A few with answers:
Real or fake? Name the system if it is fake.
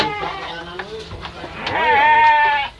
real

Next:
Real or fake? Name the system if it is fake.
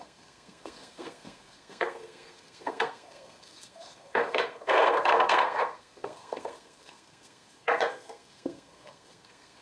fake, codec, SNAC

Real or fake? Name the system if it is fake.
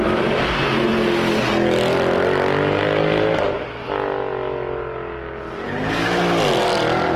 real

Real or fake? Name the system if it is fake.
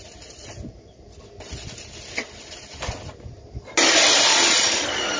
real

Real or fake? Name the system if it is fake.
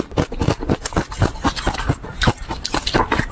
real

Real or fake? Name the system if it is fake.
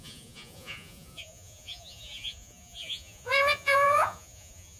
fake, vocoder, Vocos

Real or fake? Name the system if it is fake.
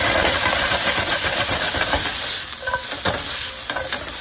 real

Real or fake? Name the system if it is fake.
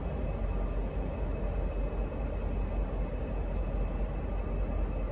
real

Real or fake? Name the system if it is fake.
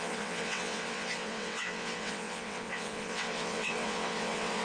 fake, vocoder, WaveNeXt